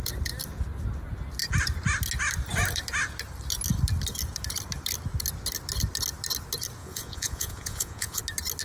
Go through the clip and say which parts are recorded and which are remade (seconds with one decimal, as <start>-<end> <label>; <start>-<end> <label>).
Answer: 0.0-6.8 recorded; 6.8-8.2 remade; 8.2-8.6 recorded